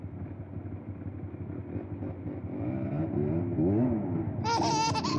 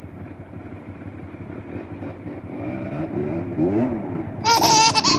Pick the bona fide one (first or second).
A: first